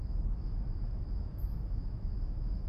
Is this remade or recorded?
remade